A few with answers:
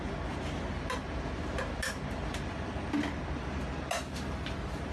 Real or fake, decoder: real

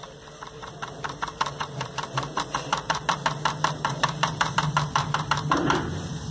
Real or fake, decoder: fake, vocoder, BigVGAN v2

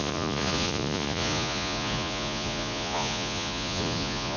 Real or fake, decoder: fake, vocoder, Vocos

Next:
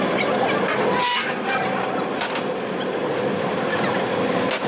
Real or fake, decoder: real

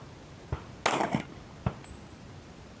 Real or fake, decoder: real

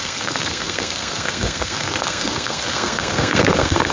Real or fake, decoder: fake, codec, SNAC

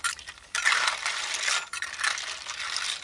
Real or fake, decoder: real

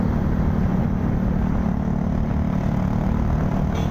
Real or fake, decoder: real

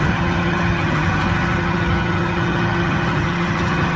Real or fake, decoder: fake, vocoder, HiFi-GAN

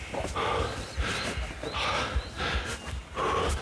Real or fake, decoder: real